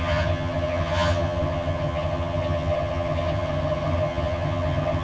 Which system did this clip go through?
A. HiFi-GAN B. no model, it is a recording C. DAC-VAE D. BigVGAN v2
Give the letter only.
A